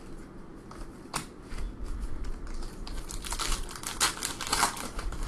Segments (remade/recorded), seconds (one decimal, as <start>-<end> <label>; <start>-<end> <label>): 0.0-5.3 recorded